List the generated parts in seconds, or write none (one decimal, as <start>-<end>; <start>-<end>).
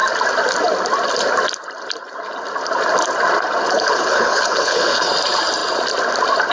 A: 3.6-5.0